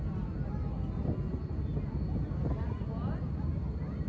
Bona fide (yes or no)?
yes